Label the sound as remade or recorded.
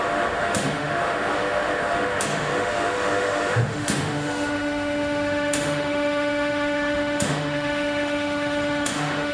remade